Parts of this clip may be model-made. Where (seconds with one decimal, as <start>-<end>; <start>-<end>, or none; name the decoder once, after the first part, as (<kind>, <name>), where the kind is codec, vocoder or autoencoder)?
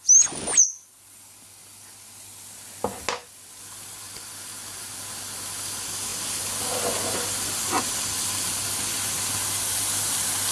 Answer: none